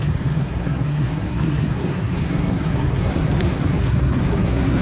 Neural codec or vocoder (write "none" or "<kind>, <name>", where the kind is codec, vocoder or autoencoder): codec, SNAC